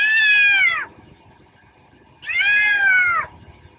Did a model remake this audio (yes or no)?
no